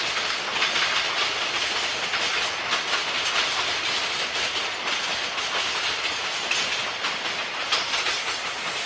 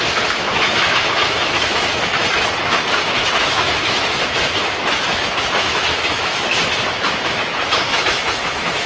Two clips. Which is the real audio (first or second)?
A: first